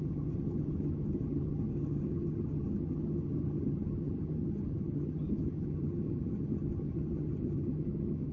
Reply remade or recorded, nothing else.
remade